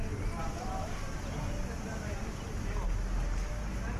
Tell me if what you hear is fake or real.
real